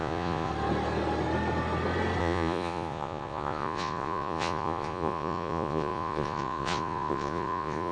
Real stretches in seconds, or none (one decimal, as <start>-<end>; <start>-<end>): 0.5-2.2